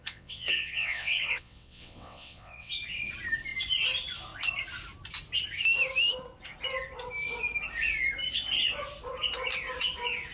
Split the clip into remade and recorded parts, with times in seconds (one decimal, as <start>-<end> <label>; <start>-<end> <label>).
0.0-2.7 remade; 2.7-10.3 recorded